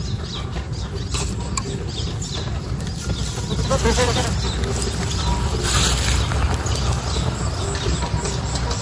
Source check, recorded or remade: recorded